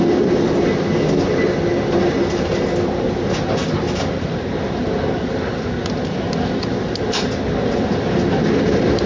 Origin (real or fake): real